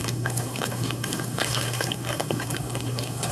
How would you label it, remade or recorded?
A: remade